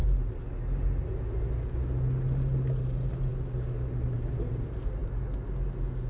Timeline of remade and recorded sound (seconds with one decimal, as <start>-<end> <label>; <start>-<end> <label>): 0.0-6.1 recorded